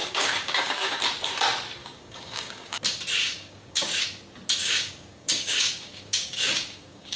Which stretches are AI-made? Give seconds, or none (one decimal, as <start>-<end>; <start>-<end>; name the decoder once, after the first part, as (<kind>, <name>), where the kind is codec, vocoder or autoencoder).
0.0-1.0 (codec, DAC); 1.8-2.8; 3.2-4.0; 4.6-7.2

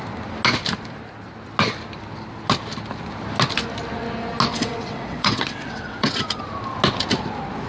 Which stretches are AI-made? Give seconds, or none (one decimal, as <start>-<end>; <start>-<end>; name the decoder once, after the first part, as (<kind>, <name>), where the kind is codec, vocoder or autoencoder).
4.5-6.4 (vocoder, WaveNeXt)

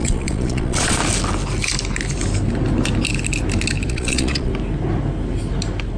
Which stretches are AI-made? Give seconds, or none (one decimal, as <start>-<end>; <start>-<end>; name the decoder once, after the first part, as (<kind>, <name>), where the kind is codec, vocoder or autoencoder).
0.0-1.0 (vocoder, Vocos); 3.9-4.5

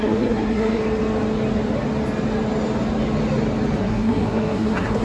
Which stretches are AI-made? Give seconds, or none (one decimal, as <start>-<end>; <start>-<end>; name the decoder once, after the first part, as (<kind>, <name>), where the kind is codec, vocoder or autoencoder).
0.0-0.8 (codec, SNAC); 3.8-5.0

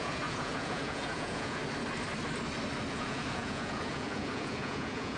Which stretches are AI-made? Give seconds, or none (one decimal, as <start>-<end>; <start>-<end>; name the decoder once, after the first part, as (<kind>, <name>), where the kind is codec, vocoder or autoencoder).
0.0-1.6 (vocoder, Vocos); 2.9-5.2

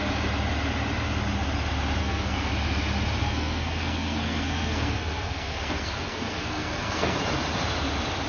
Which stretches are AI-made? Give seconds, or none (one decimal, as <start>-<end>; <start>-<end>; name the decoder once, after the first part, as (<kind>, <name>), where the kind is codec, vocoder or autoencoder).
2.0-2.5 (codec, SNAC); 3.2-7.2

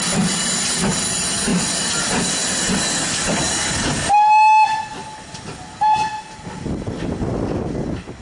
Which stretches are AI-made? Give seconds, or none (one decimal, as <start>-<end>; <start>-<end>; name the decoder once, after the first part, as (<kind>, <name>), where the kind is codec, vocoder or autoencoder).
none